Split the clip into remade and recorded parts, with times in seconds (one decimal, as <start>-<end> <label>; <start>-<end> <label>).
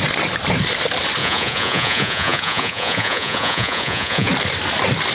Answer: 0.0-1.2 recorded; 1.2-4.3 remade; 4.3-5.1 recorded